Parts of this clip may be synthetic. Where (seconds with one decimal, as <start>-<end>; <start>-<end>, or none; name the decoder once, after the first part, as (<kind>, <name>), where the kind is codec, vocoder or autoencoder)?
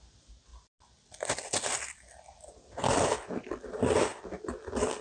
none